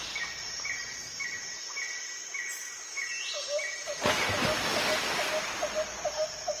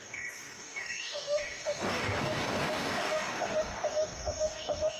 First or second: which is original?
first